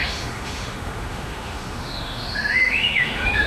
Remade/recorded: remade